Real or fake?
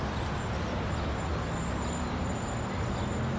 real